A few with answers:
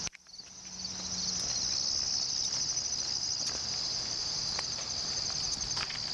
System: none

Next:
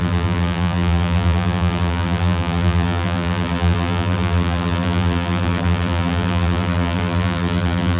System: vocoder, BigVGAN v2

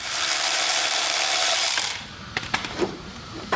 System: vocoder, BigVGAN v2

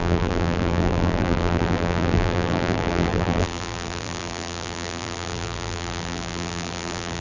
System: vocoder, BigVGAN v2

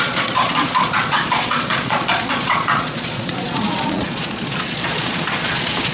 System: vocoder, Vocos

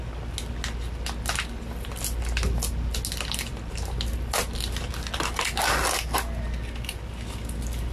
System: none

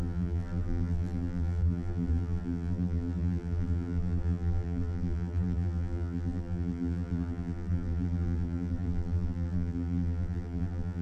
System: vocoder, BigVGAN v2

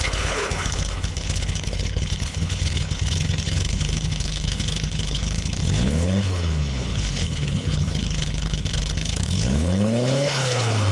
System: codec, HILCodec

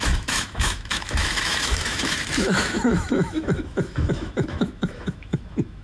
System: autoencoder, DAC-VAE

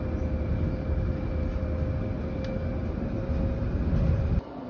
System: none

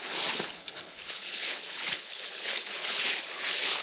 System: codec, HILCodec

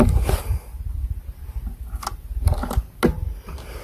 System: none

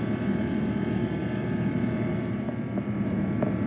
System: none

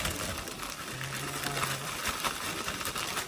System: none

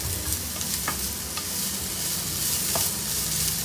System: none